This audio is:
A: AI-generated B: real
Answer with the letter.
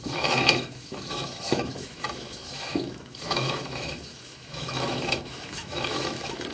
A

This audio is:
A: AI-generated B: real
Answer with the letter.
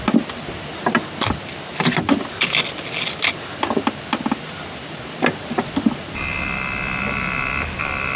B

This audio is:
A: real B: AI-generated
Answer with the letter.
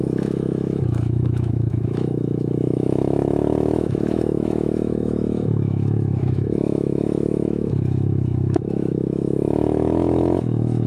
B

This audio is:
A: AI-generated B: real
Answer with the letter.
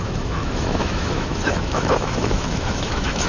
A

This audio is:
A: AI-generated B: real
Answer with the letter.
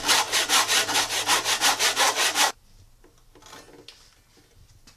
B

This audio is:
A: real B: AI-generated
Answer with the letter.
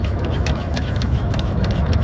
B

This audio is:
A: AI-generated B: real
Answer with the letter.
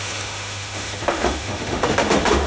A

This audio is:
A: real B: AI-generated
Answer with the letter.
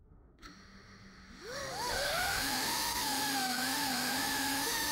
B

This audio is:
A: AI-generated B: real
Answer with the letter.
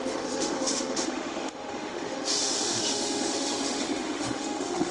A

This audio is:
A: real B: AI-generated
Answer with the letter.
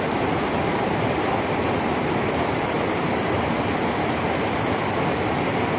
A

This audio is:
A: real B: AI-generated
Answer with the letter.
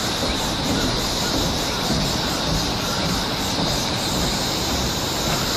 A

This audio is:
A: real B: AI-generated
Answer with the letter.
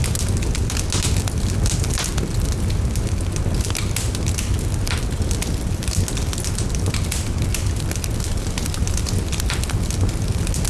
A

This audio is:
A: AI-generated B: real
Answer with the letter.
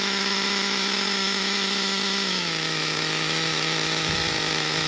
A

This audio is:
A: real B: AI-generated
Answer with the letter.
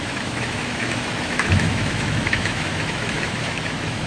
B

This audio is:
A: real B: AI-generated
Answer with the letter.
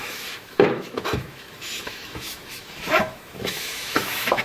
B